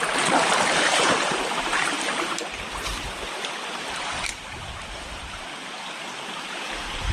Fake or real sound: fake